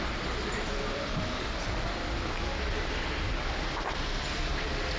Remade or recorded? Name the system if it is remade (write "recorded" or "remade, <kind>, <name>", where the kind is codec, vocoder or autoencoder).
recorded